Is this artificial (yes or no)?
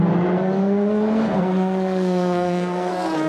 yes